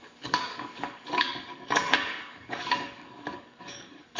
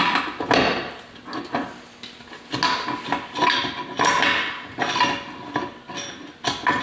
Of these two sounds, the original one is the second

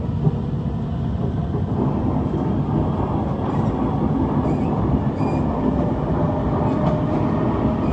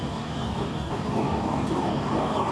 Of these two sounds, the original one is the first